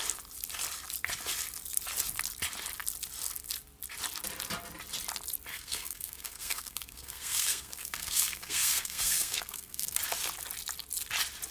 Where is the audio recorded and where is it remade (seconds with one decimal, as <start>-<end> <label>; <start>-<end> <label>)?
0.0-5.5 recorded; 5.5-10.0 remade; 10.0-11.5 recorded